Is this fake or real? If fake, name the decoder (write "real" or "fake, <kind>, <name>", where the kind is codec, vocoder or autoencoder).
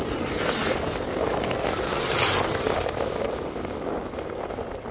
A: real